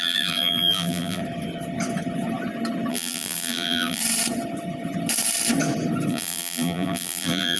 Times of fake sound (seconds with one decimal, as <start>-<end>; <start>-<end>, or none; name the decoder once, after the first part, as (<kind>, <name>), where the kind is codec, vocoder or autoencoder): 0.0-1.2 (vocoder, BigVGAN v2); 2.9-4.0; 6.1-7.6